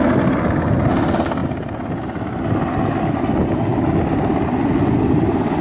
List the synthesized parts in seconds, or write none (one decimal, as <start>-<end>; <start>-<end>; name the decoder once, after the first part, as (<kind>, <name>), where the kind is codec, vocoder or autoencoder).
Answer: none